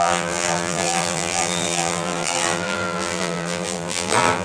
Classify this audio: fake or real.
fake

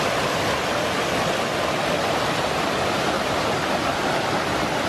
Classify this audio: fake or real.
real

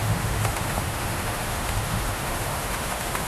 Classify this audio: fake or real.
fake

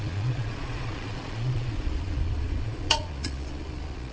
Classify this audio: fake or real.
fake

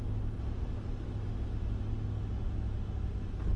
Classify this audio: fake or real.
real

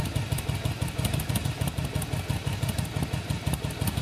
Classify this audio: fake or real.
real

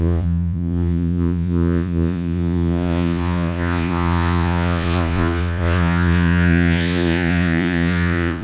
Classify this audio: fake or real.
fake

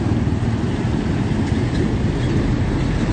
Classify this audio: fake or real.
real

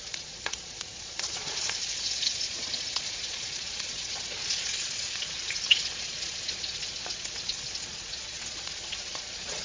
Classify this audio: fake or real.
fake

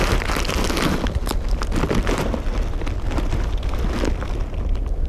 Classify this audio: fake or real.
real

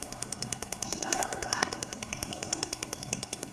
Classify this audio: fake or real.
fake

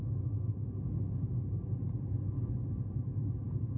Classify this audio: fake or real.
real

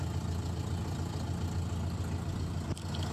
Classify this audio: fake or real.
real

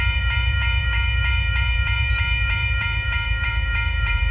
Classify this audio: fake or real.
fake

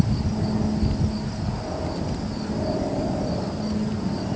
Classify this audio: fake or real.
real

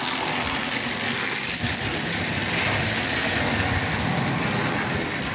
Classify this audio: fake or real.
real